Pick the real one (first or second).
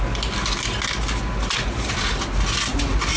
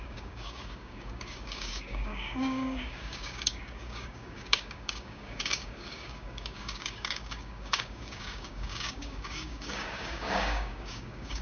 first